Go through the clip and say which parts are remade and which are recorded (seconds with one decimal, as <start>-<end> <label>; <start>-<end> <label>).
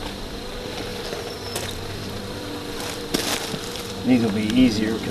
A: 0.0-0.9 recorded; 0.9-4.0 remade; 4.0-5.1 recorded